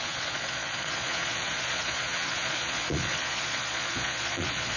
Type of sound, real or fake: fake